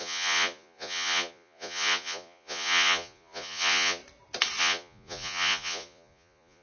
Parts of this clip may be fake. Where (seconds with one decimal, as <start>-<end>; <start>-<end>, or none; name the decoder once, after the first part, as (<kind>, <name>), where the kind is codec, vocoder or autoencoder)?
0.0-4.0 (vocoder, Vocos); 4.6-6.6